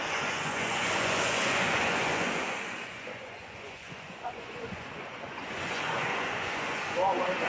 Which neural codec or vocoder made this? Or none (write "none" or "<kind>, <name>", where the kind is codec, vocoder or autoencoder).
vocoder, Vocos